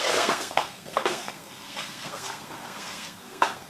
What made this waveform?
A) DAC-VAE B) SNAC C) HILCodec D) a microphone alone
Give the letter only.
B